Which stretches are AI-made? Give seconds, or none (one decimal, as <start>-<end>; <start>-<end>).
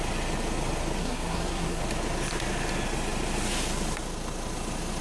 1.0-1.8